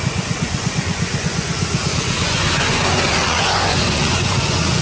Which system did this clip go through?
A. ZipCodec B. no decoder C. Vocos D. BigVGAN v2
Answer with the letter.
C